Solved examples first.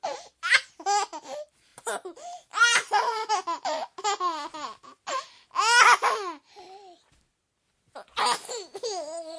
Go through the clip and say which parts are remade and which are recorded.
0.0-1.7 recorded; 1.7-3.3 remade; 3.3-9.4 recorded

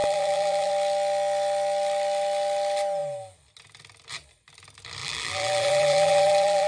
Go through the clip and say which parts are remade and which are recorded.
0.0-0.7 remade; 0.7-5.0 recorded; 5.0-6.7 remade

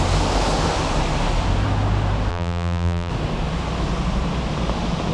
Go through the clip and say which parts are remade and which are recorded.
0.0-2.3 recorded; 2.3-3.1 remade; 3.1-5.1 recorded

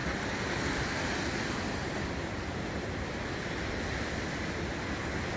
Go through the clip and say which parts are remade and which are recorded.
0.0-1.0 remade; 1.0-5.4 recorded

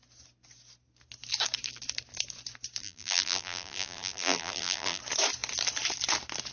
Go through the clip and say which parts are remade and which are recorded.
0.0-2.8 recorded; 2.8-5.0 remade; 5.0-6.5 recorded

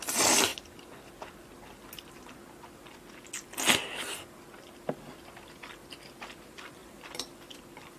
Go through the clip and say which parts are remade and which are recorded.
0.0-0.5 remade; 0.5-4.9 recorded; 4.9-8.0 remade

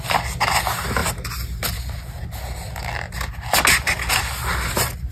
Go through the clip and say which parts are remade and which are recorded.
0.0-5.1 recorded